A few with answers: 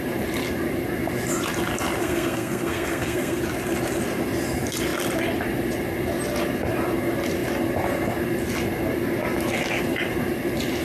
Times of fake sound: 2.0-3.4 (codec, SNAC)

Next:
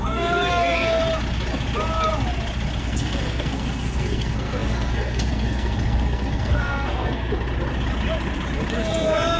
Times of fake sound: 0.0-1.0 (codec, SNAC); 2.8-7.3; 8.8-9.4